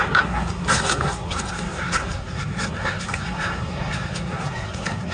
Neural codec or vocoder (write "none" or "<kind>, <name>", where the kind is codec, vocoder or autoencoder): codec, SNAC